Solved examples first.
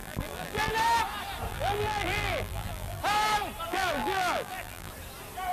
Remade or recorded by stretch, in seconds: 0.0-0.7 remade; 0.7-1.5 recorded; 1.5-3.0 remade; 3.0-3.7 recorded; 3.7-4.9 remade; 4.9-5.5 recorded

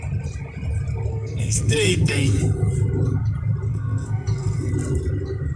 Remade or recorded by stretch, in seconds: 0.0-1.1 recorded; 1.1-2.4 remade; 2.4-3.7 recorded; 3.7-4.7 remade; 4.7-5.6 recorded

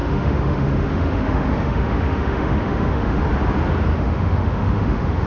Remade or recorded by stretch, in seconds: 0.0-3.2 remade; 3.2-3.9 recorded; 3.9-5.3 remade